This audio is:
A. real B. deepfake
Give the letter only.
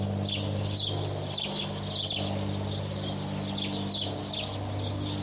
A